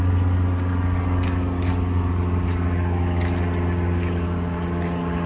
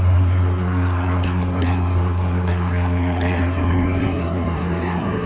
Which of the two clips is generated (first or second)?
second